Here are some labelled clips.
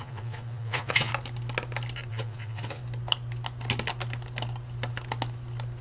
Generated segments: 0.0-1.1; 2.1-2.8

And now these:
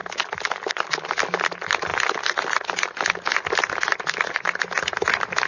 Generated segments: none

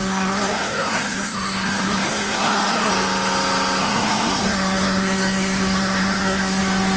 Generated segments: 0.0-2.9; 3.8-6.6

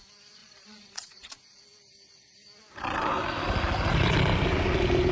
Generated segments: 0.4-1.3

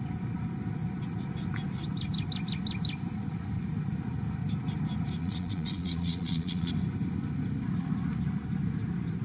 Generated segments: 5.2-6.7